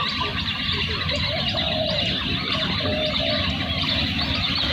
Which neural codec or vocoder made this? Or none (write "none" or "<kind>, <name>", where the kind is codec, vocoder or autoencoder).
none